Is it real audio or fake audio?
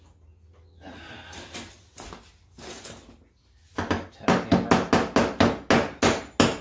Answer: real